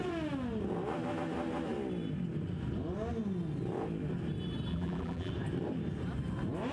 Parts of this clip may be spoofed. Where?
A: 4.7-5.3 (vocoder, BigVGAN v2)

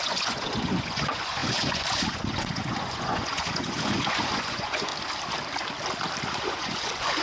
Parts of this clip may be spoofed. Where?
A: 0.0-4.9 (vocoder, Vocos); 6.4-7.2

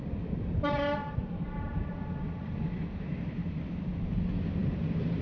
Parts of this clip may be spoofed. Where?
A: 1.0-2.0 (vocoder, BigVGAN v2); 4.6-5.2